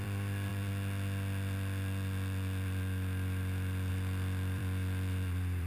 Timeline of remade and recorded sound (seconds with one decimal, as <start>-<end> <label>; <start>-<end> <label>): 0.0-0.5 remade; 0.5-3.9 recorded; 3.9-5.7 remade

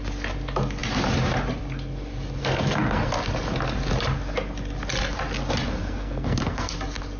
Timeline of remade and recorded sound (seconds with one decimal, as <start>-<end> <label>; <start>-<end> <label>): 0.0-2.4 recorded; 2.4-3.1 remade; 3.1-5.8 recorded; 5.8-6.7 remade; 6.7-7.2 recorded